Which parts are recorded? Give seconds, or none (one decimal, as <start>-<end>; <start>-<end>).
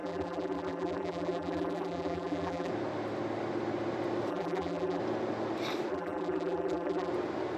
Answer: 2.7-4.3; 5.0-5.9; 7.1-7.6